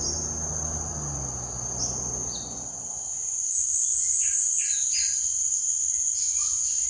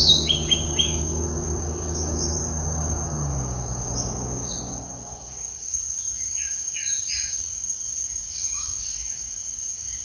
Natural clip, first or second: first